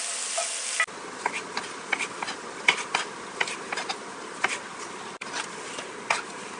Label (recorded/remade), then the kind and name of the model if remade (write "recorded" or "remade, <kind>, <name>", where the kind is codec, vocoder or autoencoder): recorded